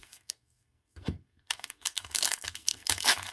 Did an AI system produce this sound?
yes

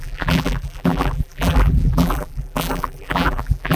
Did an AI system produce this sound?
yes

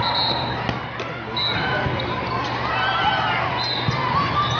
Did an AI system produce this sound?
no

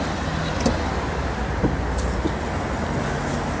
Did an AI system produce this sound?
no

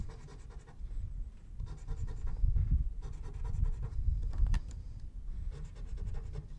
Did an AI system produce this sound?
no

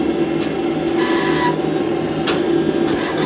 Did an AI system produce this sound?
no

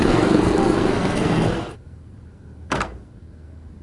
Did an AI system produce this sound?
yes